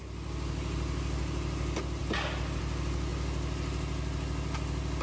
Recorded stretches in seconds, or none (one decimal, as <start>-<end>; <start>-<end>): 0.0-5.0